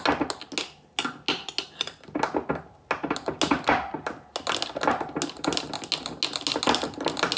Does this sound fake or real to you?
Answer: real